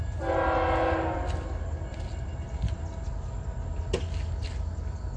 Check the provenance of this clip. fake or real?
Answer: real